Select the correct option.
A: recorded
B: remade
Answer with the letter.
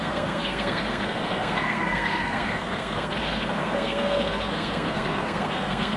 B